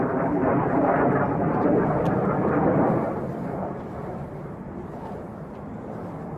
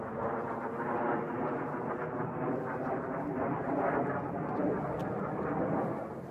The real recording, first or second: second